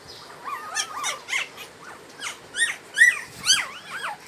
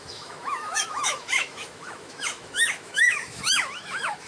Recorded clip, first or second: first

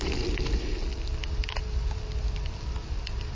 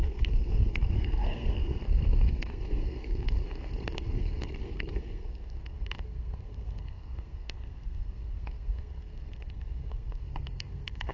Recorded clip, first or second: first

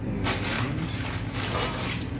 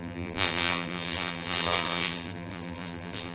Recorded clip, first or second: first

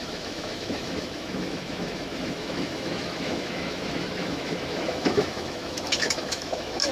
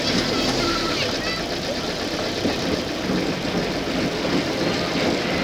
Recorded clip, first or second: second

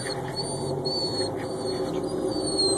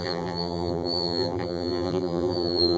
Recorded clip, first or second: first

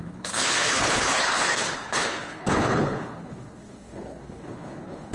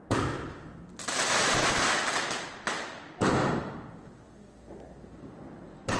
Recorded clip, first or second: second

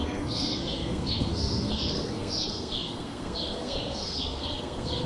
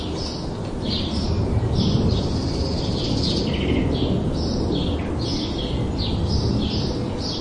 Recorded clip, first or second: second